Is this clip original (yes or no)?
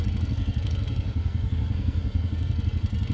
no